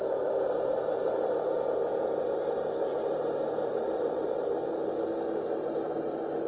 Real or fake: real